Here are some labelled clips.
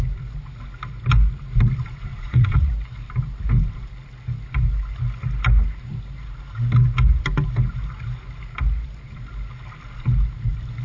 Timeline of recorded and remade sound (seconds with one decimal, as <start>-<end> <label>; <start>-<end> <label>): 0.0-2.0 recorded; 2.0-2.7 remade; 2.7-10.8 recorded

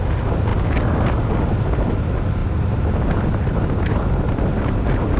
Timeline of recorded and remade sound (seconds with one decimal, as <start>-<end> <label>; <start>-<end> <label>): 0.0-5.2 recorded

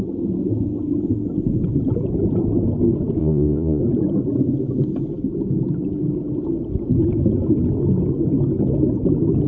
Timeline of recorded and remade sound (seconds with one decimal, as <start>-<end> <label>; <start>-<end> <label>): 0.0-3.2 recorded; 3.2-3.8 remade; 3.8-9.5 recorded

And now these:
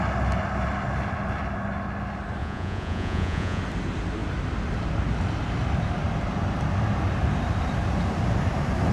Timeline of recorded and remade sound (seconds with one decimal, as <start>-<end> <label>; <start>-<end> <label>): 0.0-2.4 recorded; 2.4-3.6 remade; 3.6-8.9 recorded

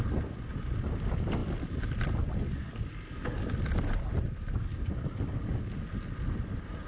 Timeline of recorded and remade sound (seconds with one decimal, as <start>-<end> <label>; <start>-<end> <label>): 0.0-6.9 recorded

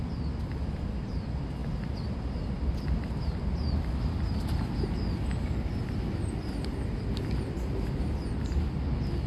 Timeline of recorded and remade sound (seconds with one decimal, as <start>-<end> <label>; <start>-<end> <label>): 0.0-9.3 recorded

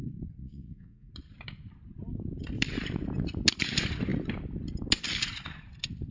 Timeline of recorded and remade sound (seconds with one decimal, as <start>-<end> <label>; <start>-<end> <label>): 0.0-0.4 recorded; 0.4-1.1 remade; 1.1-6.1 recorded